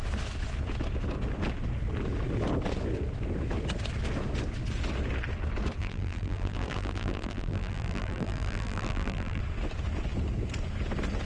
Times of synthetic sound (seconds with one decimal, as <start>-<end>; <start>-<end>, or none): 5.8-9.4